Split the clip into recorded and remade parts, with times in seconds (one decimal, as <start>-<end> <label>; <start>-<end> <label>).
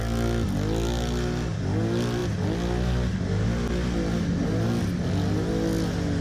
0.0-6.2 recorded